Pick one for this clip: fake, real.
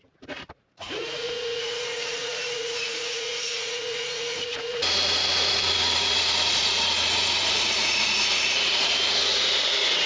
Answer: fake